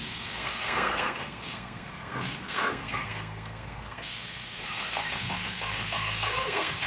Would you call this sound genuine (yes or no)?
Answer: no